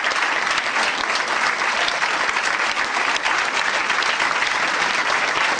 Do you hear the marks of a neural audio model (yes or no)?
no